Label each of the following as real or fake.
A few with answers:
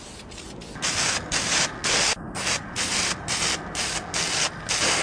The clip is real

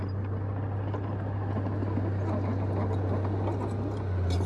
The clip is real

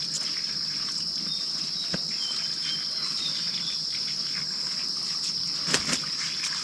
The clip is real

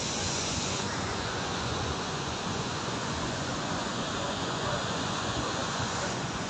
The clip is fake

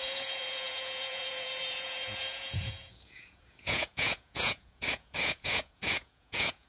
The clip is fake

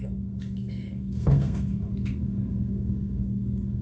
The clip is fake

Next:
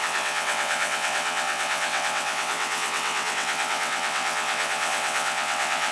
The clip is fake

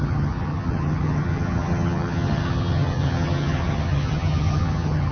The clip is fake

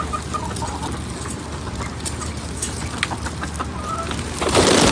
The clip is real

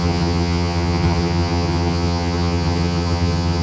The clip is fake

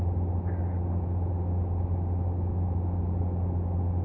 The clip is real